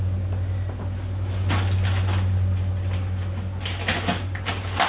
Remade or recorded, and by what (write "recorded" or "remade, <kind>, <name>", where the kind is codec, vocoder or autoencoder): recorded